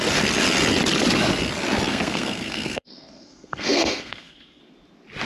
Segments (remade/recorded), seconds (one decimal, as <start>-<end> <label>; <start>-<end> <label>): 0.0-1.9 recorded; 1.9-4.6 remade; 4.6-5.3 recorded